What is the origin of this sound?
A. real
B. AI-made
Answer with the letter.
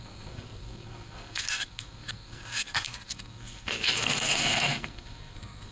B